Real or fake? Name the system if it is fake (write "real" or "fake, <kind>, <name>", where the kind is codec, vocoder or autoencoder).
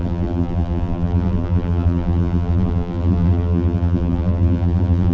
fake, vocoder, BigVGAN v2